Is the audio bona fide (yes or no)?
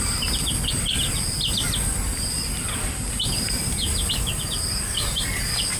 yes